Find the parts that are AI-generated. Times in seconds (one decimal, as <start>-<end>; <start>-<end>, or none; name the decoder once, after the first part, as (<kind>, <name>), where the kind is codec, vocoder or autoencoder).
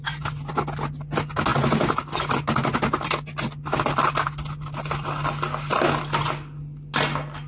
none